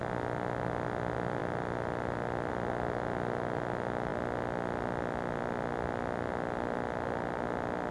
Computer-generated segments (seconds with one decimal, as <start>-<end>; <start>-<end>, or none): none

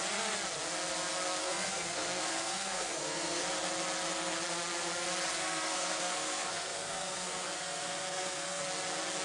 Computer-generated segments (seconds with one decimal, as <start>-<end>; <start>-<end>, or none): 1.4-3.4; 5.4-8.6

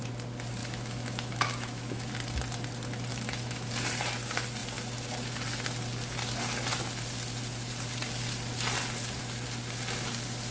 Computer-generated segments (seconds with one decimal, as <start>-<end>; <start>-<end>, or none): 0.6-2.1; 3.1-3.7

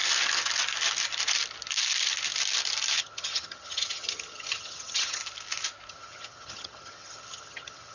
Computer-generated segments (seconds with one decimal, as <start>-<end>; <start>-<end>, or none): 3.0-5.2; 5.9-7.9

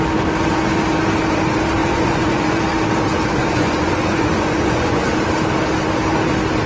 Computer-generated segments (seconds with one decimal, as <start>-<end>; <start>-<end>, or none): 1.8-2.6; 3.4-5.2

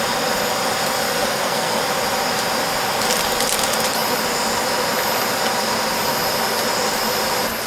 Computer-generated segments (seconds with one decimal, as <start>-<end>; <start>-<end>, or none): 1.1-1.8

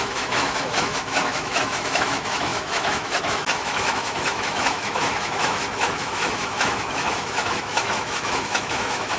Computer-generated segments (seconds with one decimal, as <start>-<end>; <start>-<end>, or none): 0.0-9.2

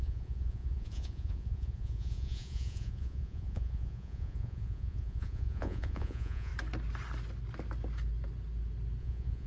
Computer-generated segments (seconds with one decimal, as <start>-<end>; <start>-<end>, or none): 0.0-6.5; 9.0-9.5